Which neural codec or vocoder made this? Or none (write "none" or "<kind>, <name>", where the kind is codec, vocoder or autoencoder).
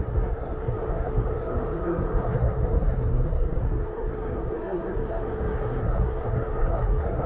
codec, SNAC